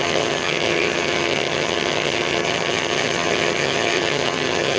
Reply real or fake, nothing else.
fake